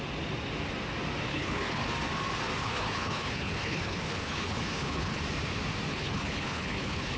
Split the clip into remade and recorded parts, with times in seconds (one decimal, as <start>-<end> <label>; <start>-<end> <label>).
0.0-1.3 recorded; 1.3-1.9 remade; 1.9-2.6 recorded; 2.6-5.2 remade; 5.2-5.9 recorded; 5.9-7.2 remade